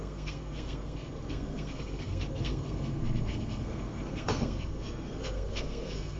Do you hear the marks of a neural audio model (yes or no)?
yes